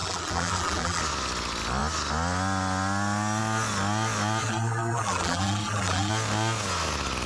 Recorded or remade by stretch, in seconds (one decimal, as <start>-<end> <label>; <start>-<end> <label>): 0.0-1.0 remade; 1.0-4.4 recorded; 4.4-6.1 remade; 6.1-7.3 recorded